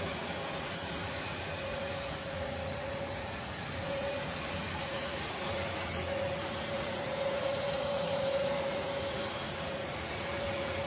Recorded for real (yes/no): no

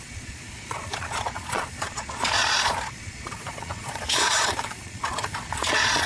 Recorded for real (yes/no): no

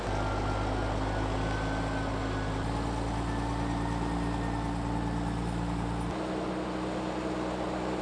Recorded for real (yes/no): yes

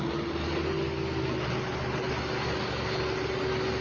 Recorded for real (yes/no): yes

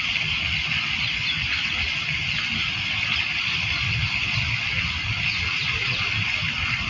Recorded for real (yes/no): yes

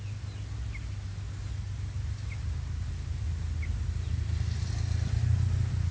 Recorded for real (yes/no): yes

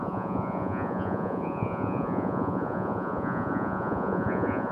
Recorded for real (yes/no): no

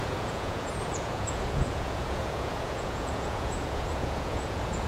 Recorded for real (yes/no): no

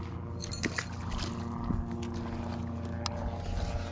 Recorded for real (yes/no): yes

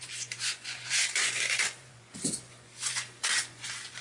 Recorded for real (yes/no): no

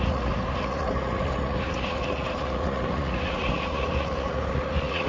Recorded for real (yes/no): no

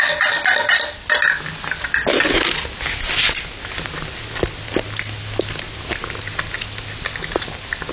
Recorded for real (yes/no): yes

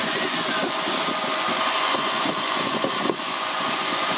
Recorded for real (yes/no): no